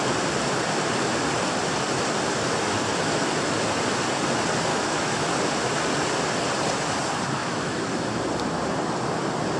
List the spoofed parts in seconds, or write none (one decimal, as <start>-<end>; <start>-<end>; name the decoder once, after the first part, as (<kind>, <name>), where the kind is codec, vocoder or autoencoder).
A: 4.7-5.3 (autoencoder, DAC-VAE); 7.4-8.2